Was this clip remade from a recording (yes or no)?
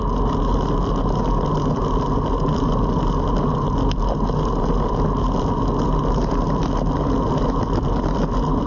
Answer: no